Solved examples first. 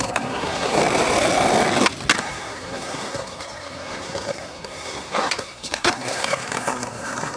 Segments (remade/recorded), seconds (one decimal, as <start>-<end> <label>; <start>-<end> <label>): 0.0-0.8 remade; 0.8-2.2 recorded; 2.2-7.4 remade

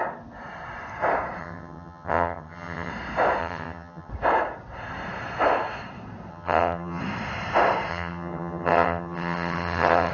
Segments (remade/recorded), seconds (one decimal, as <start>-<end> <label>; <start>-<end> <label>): 0.0-1.4 recorded; 1.4-2.9 remade; 2.9-3.4 recorded; 3.4-4.1 remade; 4.1-6.3 recorded; 6.3-7.0 remade; 7.0-7.9 recorded; 7.9-10.1 remade

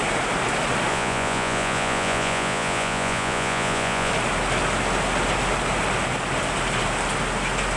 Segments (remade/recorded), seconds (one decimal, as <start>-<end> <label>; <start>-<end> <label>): 0.0-0.9 recorded; 0.9-4.1 remade; 4.1-7.8 recorded

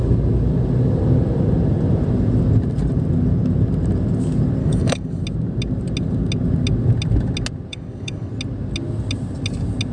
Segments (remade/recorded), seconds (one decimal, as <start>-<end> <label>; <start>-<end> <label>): 0.0-4.6 recorded; 4.6-5.2 remade; 5.2-7.7 recorded; 7.7-8.3 remade; 8.3-9.9 recorded